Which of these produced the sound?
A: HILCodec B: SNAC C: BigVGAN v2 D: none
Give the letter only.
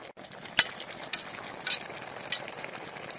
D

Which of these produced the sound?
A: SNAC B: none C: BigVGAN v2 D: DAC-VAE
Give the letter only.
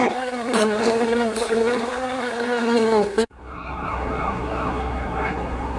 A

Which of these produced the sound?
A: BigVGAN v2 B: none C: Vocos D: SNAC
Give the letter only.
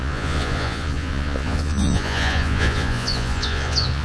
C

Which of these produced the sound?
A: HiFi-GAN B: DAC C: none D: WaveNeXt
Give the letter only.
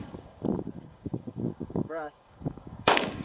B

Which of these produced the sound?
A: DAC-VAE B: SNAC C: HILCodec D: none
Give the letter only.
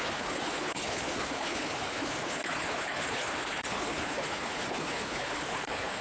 C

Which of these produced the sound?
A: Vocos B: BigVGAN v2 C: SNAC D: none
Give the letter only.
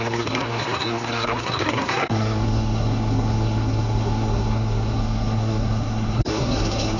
C